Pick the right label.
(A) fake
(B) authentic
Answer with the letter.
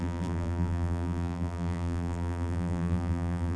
A